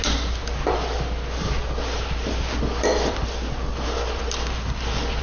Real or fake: real